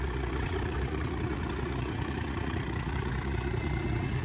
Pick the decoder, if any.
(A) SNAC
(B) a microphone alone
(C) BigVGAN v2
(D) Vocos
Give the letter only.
D